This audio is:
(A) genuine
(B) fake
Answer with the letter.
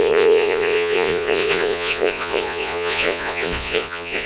B